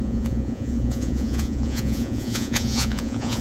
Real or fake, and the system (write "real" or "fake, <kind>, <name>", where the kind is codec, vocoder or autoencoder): fake, vocoder, Vocos